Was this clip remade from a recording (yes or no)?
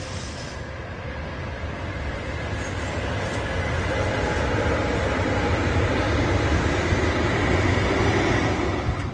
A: no